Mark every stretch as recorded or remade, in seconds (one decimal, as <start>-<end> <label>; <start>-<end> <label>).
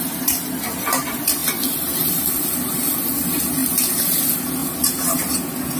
0.0-5.8 recorded